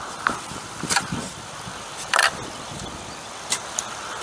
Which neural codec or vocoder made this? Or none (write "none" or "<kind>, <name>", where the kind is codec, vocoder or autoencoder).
vocoder, BigVGAN v2